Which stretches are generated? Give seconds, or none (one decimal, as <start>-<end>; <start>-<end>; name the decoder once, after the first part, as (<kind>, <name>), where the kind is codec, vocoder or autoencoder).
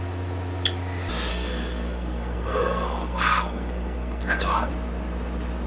1.3-4.7 (codec, SNAC)